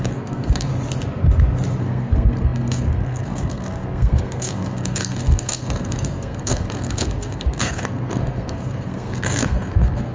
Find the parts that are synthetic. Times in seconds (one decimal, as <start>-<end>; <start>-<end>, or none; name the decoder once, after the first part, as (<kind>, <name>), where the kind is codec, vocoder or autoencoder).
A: 0.0-0.7 (codec, SNAC); 1.8-10.1